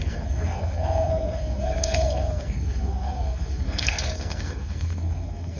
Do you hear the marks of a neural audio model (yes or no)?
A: yes